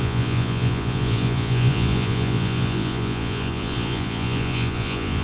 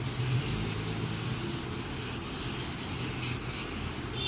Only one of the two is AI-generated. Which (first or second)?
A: first